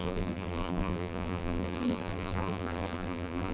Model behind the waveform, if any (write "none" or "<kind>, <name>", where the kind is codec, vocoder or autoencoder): vocoder, BigVGAN v2